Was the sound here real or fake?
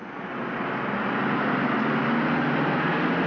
real